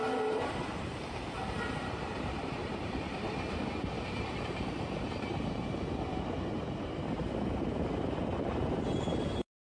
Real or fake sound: fake